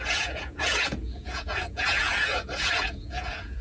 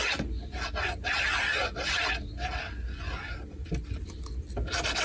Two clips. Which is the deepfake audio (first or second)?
first